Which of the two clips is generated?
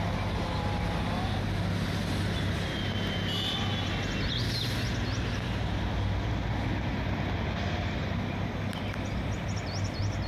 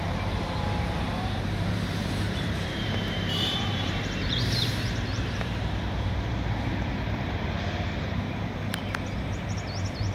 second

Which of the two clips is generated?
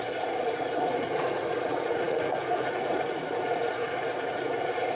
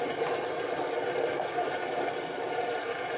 first